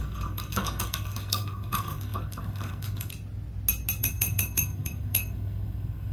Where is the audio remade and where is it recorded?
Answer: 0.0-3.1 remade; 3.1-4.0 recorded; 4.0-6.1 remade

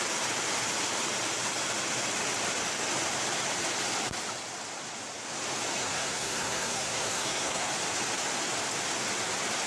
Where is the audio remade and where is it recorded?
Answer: 0.0-5.8 recorded; 5.8-7.7 remade; 7.7-9.7 recorded